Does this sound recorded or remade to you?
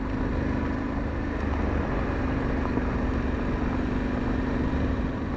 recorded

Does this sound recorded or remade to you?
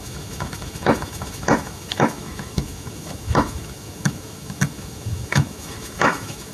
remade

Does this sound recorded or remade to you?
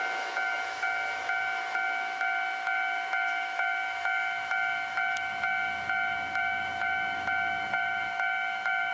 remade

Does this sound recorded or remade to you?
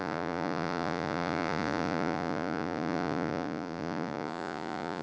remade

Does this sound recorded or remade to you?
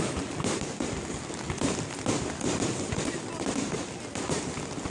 recorded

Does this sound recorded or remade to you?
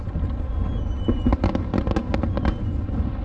recorded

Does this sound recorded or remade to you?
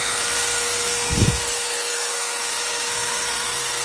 remade